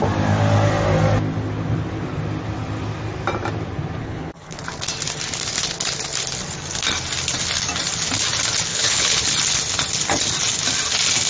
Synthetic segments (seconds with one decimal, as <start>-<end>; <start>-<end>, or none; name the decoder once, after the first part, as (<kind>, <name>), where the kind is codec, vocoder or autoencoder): 4.0-4.6 (codec, HILCodec); 8.7-9.2